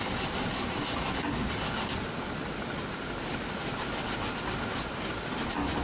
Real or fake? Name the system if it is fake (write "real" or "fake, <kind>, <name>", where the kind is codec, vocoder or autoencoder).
real